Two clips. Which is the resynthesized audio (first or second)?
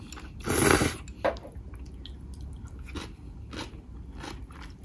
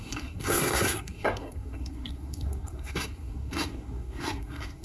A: second